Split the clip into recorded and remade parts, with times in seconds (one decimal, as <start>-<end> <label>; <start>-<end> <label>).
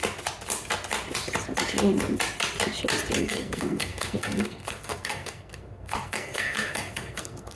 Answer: 0.0-3.2 recorded; 3.2-7.6 remade